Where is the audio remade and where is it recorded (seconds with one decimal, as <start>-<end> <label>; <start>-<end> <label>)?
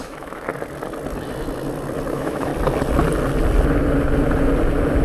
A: 0.0-0.5 remade; 0.5-2.1 recorded; 2.1-2.5 remade; 2.5-5.0 recorded